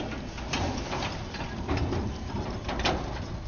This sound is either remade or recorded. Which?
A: recorded